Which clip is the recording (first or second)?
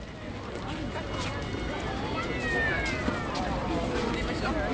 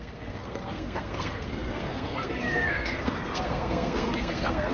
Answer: first